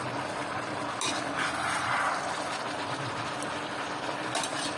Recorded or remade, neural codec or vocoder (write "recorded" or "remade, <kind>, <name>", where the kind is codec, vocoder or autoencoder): recorded